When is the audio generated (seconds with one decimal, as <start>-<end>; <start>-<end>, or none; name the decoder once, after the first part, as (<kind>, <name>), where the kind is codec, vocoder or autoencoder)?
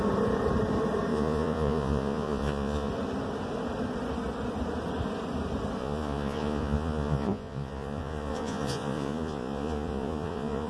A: 1.1-2.9 (vocoder, Vocos); 5.8-10.7